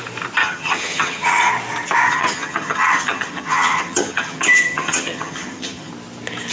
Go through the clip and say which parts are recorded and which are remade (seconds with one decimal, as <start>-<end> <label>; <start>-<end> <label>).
0.0-0.4 recorded; 0.4-1.5 remade; 1.5-2.1 recorded; 2.1-5.9 remade; 5.9-6.5 recorded